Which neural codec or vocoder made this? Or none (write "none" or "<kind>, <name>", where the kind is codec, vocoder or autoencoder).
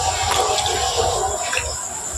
none